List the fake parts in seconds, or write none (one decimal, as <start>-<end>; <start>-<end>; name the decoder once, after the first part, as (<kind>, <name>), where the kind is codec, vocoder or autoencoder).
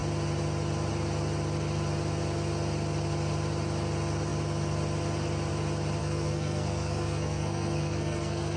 6.0-8.6 (codec, SNAC)